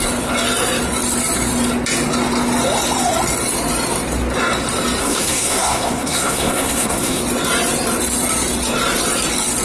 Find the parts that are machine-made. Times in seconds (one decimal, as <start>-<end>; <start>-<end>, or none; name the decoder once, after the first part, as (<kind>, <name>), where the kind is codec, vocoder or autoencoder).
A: 5.0-7.2 (codec, SNAC)